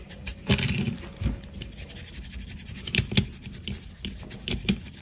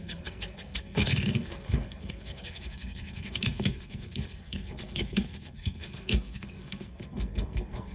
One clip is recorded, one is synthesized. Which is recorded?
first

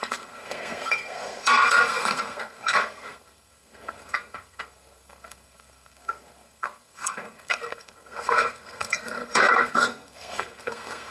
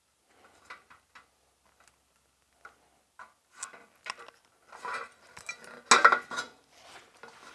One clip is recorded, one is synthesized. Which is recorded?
second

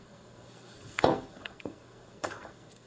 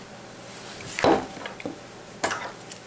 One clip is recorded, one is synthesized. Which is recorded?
second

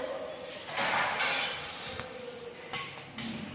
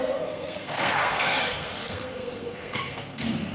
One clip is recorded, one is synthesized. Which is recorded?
first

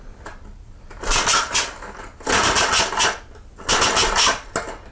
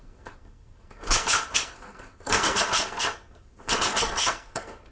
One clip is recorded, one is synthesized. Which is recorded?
first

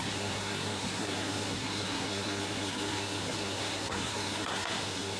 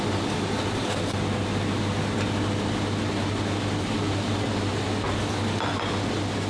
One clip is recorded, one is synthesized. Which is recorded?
second